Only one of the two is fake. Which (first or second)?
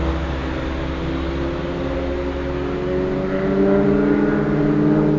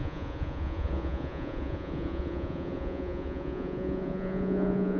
second